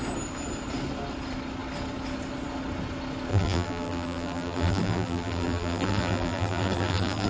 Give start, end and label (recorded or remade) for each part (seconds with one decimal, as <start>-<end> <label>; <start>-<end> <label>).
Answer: 0.0-3.3 recorded; 3.3-7.3 remade